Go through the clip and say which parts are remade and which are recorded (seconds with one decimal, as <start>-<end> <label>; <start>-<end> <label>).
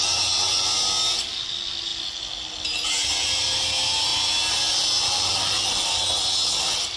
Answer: 0.0-7.0 recorded